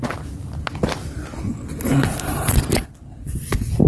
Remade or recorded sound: recorded